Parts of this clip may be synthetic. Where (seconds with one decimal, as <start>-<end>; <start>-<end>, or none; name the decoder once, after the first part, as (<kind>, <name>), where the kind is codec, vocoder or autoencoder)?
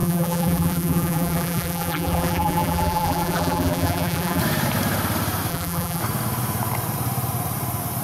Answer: 0.0-4.4 (vocoder, BigVGAN v2); 5.5-6.0